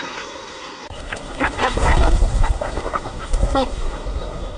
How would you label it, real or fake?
fake